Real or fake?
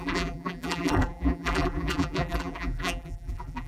fake